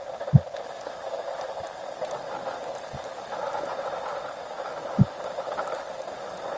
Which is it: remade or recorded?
recorded